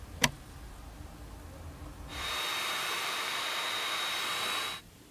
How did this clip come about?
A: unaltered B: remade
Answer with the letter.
A